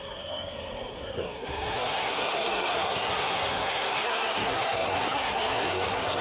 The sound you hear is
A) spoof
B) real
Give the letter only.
A